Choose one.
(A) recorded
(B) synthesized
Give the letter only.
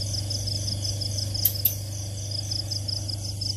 A